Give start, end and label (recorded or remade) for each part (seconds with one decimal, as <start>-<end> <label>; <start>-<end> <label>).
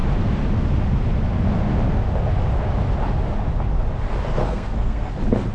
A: 0.0-4.4 recorded; 4.4-5.1 remade; 5.1-5.5 recorded